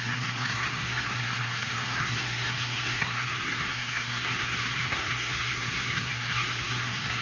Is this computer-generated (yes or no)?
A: yes